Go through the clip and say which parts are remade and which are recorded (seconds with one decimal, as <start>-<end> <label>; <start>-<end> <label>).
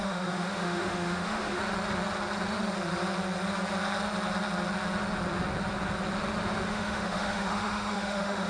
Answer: 0.0-1.6 remade; 1.6-6.7 recorded; 6.7-8.5 remade